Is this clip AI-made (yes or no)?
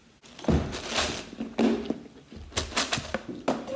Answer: no